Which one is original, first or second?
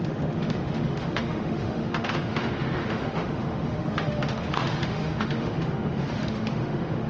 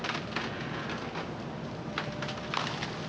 second